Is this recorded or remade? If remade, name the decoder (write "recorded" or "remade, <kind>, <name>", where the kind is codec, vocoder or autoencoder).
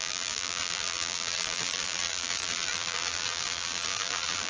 remade, vocoder, BigVGAN v2